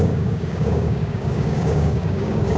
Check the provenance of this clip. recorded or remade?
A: remade